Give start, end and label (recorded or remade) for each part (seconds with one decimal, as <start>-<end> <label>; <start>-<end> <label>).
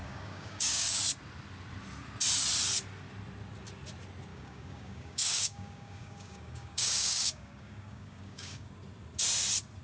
0.0-1.0 remade; 1.0-4.3 recorded; 4.3-8.7 remade; 8.7-9.8 recorded